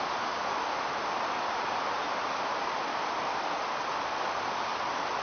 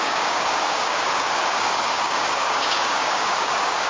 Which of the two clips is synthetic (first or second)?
second